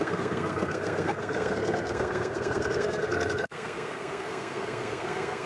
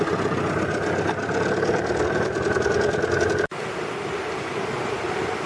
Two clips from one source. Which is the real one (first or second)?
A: second